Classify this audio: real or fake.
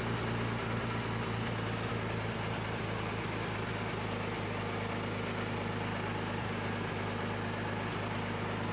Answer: real